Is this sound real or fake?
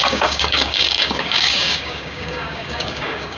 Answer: fake